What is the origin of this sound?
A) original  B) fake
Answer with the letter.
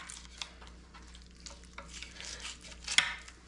A